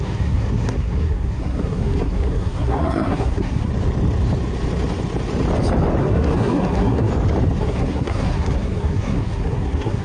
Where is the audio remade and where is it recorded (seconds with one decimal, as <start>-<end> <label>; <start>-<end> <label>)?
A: 0.0-3.7 remade; 3.7-6.0 recorded; 6.0-7.1 remade; 7.1-7.6 recorded; 7.6-10.0 remade